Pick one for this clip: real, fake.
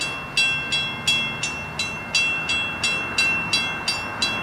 real